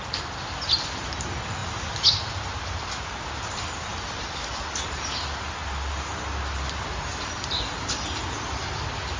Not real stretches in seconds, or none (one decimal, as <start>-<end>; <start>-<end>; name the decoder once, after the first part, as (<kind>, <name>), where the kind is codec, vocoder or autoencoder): 3.9-4.6 (vocoder, BigVGAN v2); 7.1-7.8